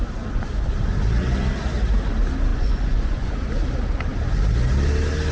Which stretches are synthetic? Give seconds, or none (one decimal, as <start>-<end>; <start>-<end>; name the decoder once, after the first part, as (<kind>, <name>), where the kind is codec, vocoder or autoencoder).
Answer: 2.5-3.3 (vocoder, Vocos)